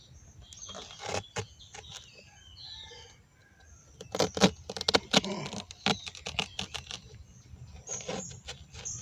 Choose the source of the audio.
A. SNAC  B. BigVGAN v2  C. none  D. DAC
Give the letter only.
C